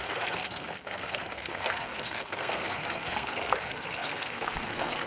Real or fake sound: fake